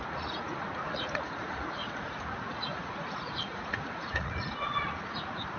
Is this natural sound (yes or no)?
no